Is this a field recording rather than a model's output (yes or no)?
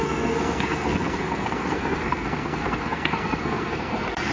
no